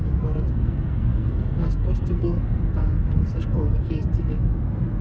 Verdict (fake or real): fake